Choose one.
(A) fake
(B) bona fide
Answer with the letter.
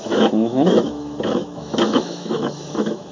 A